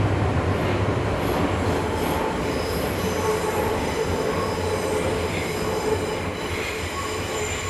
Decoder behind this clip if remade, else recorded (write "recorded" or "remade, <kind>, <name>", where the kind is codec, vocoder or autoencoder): recorded